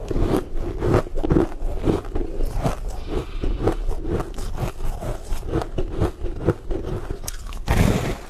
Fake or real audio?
real